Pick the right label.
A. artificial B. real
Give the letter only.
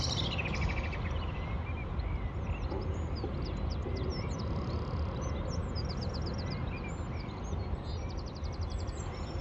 B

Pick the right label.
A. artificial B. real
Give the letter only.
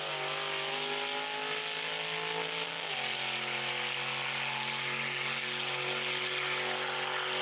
B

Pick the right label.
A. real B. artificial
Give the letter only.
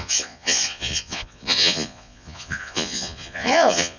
B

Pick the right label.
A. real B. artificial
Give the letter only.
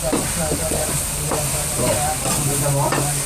A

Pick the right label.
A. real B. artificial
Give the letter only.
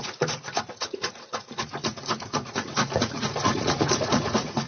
B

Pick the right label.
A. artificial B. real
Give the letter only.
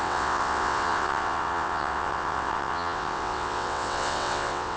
A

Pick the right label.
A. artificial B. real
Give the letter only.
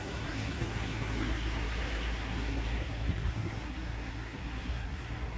A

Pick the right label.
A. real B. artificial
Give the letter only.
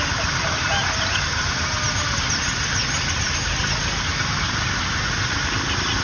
A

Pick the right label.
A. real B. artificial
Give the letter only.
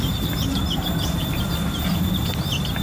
A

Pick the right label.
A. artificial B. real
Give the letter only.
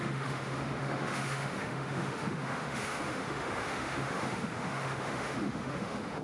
A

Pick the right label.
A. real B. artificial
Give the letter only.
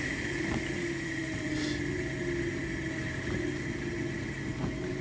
A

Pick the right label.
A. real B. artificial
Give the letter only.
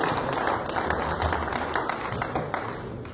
A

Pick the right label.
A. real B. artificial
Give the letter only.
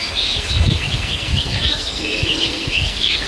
B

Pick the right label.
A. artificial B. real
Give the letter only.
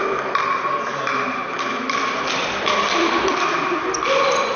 B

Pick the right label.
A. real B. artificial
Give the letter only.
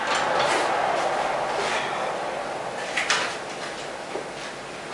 A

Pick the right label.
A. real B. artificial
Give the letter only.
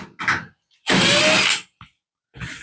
A